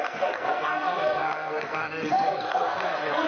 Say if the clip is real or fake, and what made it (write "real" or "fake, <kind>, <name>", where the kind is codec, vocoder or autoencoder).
fake, codec, SNAC